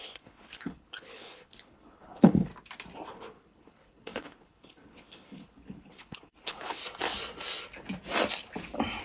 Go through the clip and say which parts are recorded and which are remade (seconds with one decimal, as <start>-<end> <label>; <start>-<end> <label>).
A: 0.0-2.5 remade; 2.5-3.1 recorded; 3.1-6.8 remade; 6.8-9.0 recorded